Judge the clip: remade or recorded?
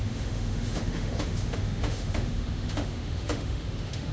remade